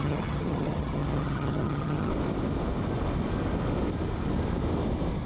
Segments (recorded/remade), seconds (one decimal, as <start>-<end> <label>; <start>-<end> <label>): 0.0-2.1 remade; 2.1-5.3 recorded